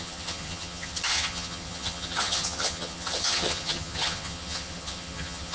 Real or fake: fake